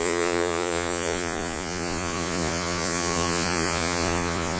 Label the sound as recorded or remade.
remade